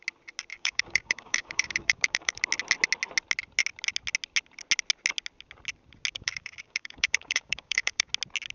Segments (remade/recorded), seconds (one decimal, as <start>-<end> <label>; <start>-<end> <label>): 0.0-0.5 recorded; 0.5-2.4 remade; 2.4-6.1 recorded; 6.1-8.1 remade; 8.1-8.5 recorded